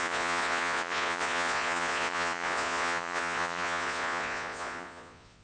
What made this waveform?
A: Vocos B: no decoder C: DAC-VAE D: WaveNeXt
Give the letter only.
A